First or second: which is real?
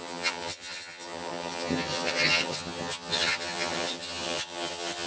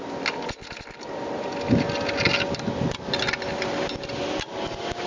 second